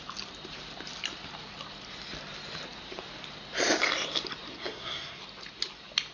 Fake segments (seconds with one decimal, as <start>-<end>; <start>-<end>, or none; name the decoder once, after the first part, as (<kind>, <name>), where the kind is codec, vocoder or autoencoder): 4.6-5.2 (codec, SNAC)